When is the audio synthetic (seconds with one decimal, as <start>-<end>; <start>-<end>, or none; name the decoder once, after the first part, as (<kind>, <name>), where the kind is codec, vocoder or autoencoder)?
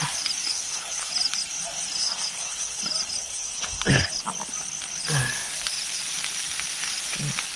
0.5-1.1 (codec, HILCodec); 2.0-2.8; 3.2-4.1